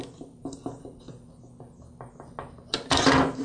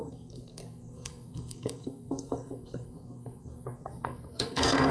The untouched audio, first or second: first